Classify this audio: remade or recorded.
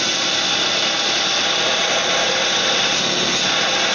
recorded